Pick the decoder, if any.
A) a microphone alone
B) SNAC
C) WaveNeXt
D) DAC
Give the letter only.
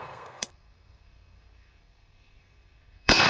B